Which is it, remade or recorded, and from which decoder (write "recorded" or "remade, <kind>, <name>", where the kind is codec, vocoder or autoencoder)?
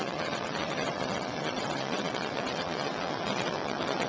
remade, vocoder, WaveNeXt